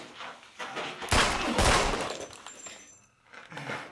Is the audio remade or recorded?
recorded